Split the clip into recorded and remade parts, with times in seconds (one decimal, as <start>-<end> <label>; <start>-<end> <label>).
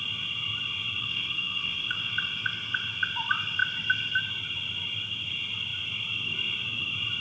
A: 0.0-1.0 recorded; 1.0-2.1 remade; 2.1-7.2 recorded